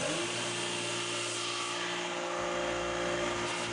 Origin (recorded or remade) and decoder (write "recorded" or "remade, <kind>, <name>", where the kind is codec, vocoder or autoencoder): recorded